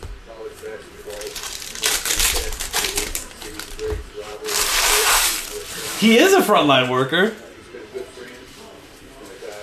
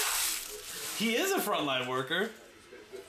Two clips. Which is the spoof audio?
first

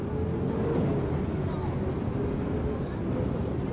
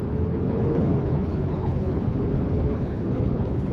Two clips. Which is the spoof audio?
second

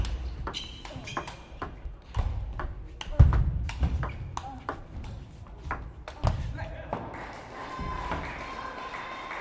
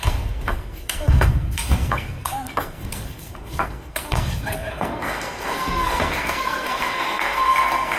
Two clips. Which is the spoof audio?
second